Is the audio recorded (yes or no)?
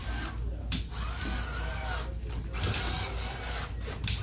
yes